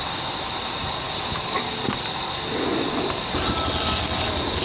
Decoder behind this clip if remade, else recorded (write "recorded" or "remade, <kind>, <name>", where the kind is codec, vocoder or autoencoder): recorded